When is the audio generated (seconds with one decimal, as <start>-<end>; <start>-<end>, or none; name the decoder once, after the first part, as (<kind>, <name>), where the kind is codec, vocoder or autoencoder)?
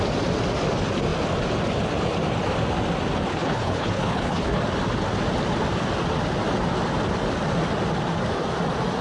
3.3-4.6 (codec, HILCodec)